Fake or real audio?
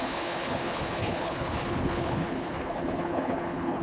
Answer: fake